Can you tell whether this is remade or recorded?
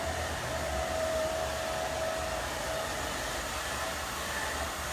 recorded